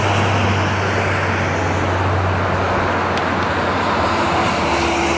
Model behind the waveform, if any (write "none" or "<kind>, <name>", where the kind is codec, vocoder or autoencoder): none